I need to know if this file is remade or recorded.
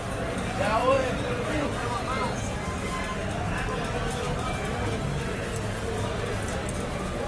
recorded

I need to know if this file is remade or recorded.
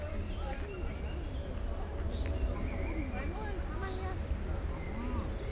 recorded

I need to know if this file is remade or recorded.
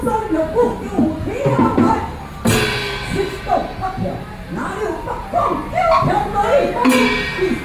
recorded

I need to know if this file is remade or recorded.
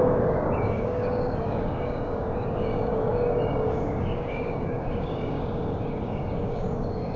remade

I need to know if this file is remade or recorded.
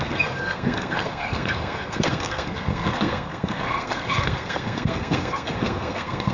remade